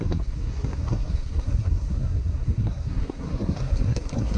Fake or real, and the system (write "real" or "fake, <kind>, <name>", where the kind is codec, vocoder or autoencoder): fake, codec, SNAC